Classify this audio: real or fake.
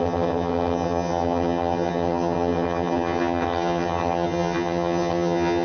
fake